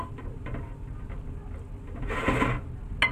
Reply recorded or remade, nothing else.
recorded